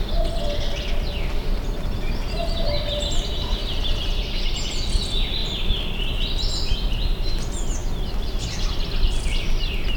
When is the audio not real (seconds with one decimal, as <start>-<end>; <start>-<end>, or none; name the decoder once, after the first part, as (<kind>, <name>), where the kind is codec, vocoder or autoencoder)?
0.0-4.2 (vocoder, BigVGAN v2); 4.9-10.0